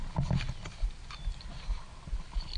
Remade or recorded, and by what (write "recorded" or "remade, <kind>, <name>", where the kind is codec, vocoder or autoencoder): recorded